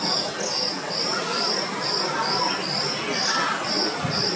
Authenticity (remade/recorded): recorded